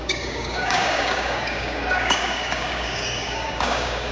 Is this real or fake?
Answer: fake